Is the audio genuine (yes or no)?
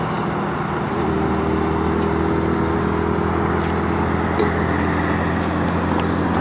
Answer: yes